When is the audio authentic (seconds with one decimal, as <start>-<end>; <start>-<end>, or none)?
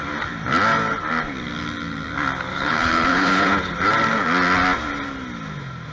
0.0-2.5; 3.7-5.9